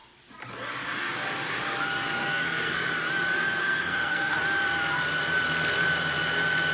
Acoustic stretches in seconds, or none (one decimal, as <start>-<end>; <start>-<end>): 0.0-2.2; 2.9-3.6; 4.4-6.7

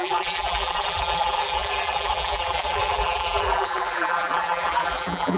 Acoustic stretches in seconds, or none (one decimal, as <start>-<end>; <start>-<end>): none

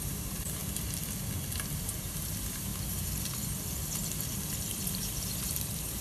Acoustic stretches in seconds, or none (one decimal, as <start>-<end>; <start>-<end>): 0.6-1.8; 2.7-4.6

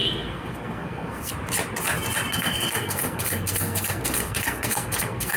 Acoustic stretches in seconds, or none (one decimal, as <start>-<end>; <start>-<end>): 1.3-2.3